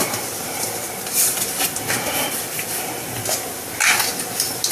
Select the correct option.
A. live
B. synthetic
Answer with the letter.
A